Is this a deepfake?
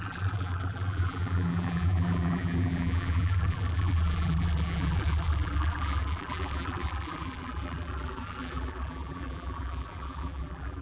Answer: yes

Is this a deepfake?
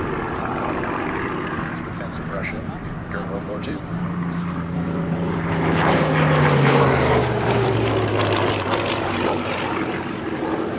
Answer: yes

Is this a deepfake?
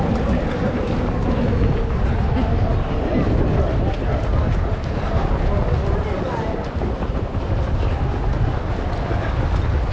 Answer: no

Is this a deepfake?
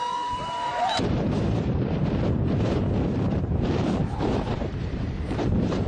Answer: yes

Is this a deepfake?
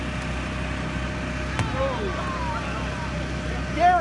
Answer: no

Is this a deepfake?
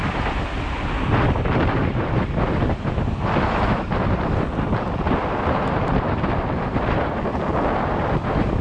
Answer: no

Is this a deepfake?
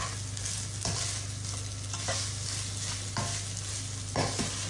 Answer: no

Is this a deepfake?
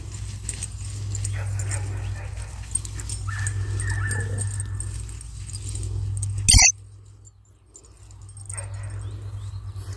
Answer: no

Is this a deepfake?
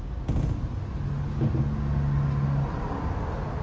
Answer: no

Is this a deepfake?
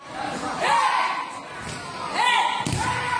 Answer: yes